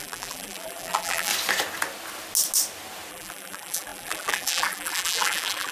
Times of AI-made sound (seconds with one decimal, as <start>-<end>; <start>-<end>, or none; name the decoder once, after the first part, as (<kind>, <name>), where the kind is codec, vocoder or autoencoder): 0.0-1.3 (vocoder, BigVGAN v2); 3.1-5.7